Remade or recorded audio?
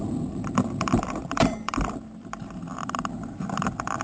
remade